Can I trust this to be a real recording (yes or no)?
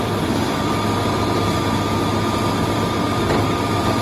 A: no